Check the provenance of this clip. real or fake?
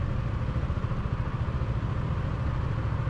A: real